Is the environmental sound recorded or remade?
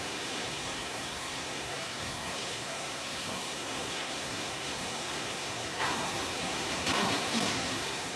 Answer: remade